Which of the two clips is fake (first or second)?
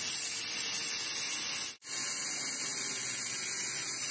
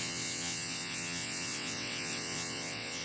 second